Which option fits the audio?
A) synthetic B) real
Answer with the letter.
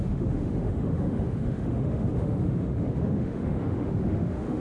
A